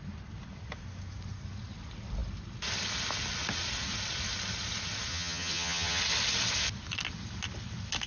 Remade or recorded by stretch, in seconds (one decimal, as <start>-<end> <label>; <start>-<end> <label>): 0.0-5.1 recorded; 5.1-6.0 remade; 6.0-8.1 recorded